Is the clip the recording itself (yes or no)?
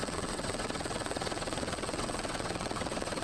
no